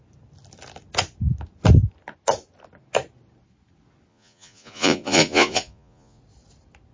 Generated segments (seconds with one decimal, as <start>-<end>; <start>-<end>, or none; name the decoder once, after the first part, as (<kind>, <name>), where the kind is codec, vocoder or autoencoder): 4.1-6.2 (vocoder, Vocos)